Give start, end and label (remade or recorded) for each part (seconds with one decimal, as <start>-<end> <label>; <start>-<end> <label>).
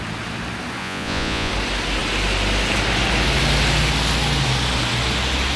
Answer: 0.0-0.8 recorded; 0.8-1.5 remade; 1.5-5.6 recorded